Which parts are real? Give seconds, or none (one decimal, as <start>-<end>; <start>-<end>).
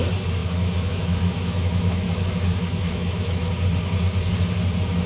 0.0-0.4; 3.5-5.1